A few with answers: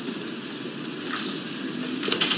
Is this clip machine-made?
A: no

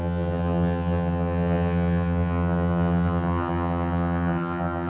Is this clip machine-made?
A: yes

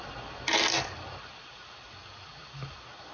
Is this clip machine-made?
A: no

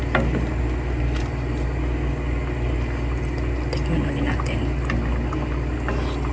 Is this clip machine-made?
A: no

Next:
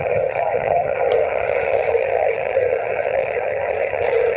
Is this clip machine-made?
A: yes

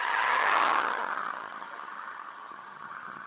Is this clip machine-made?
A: yes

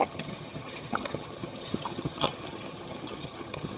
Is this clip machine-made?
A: yes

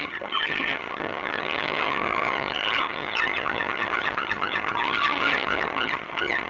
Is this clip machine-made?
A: yes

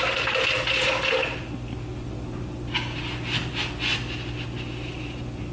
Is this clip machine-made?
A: no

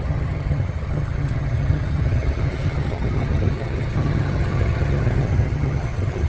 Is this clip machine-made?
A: yes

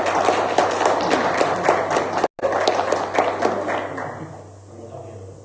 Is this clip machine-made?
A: no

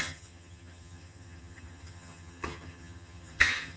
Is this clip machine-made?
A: yes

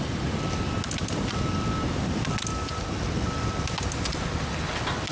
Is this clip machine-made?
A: no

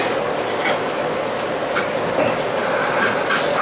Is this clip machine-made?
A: no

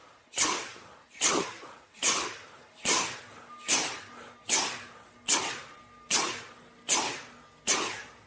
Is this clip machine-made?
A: no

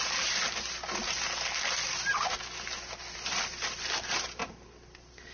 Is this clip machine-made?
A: no